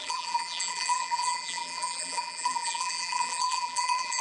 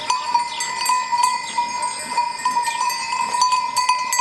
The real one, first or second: second